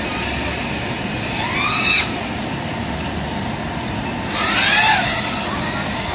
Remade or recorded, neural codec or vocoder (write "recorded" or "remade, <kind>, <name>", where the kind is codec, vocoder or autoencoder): recorded